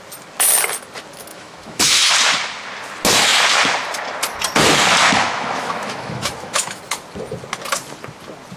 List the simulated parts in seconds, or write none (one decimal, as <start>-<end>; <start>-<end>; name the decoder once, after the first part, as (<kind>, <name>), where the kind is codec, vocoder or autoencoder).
1.3-2.1 (autoencoder, DAC-VAE); 5.0-6.8